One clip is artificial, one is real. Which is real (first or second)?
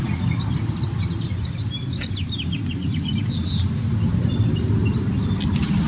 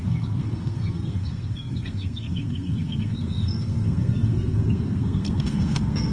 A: first